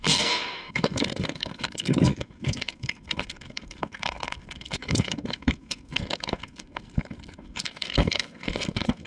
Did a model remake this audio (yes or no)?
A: yes